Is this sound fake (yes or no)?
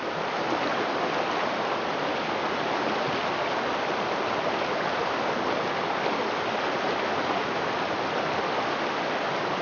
no